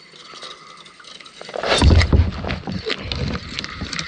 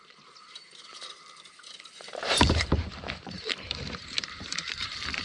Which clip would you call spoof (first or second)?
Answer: second